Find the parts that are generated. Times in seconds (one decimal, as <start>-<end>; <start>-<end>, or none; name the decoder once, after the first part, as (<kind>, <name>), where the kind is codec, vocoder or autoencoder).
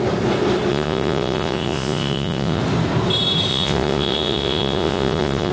0.7-2.6 (vocoder, Vocos); 3.5-5.5